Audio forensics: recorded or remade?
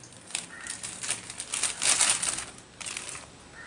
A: recorded